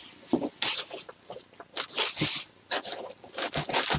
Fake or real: real